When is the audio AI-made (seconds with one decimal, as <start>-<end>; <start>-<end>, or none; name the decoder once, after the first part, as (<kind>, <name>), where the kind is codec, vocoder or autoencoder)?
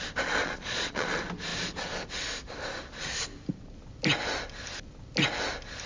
0.4-1.1 (vocoder, Vocos)